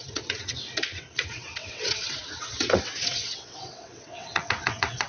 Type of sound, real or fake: fake